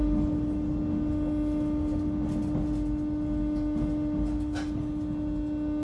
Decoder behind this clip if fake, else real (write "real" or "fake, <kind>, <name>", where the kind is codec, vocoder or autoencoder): real